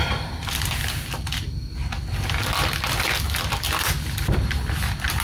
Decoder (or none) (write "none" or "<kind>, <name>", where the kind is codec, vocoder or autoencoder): none